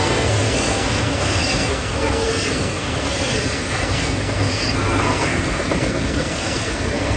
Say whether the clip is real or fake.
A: fake